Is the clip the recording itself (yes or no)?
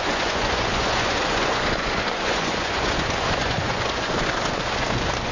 no